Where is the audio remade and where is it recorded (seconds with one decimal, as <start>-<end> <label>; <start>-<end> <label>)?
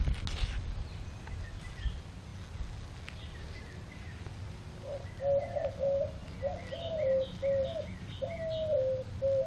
0.0-9.5 recorded